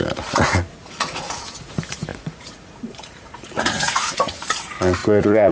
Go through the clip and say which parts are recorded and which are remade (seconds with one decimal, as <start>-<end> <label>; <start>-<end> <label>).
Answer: 0.0-5.5 remade